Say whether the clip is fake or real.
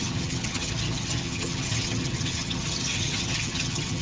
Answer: fake